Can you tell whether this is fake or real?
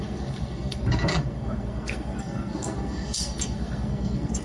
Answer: fake